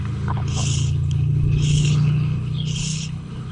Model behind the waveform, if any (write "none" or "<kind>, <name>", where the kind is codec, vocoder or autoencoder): codec, HILCodec